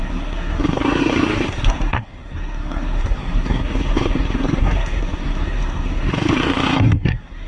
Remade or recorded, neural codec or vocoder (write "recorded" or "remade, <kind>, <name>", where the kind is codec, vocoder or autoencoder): remade, codec, SNAC